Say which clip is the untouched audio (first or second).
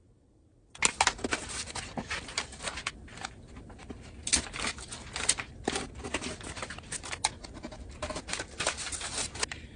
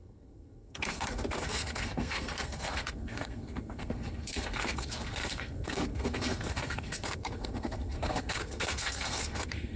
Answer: first